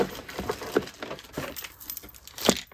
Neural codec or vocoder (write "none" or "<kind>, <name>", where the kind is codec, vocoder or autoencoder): none